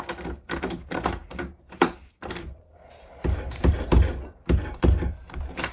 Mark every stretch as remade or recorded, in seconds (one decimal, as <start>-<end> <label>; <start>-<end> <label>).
0.0-5.7 remade